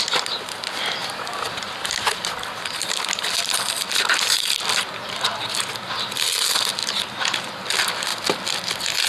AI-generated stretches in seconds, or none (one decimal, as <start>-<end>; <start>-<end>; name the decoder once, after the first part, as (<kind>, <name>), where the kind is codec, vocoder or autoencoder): none